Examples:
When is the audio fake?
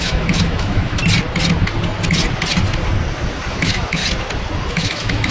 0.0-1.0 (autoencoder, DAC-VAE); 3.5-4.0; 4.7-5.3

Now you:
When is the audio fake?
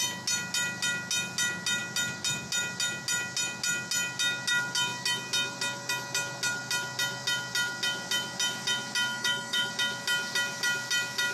9.1-9.7 (autoencoder, DAC-VAE)